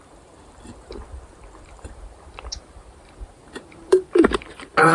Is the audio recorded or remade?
remade